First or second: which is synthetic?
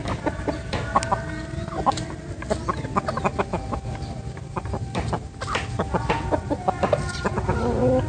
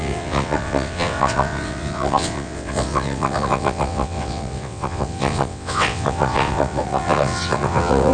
second